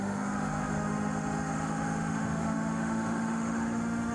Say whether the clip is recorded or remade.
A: remade